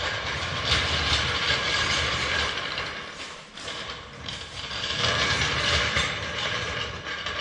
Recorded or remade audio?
remade